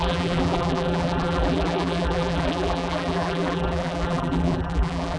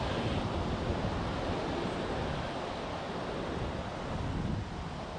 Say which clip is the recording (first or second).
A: second